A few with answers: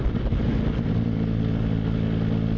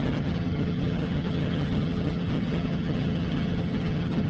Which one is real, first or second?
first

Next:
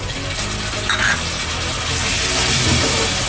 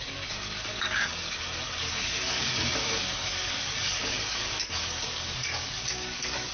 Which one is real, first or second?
first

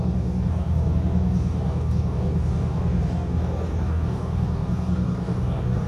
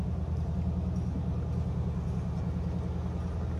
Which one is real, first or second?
second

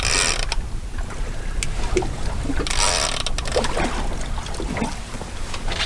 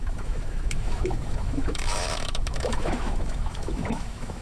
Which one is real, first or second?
first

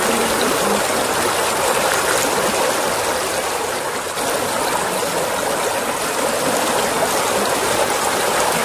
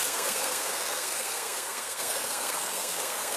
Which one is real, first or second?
first